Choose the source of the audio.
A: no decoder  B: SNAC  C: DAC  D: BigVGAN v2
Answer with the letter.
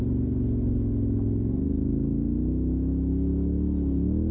A